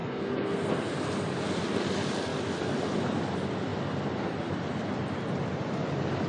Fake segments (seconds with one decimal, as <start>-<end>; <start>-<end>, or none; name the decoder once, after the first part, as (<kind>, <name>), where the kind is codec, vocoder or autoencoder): 0.0-0.8 (codec, SNAC)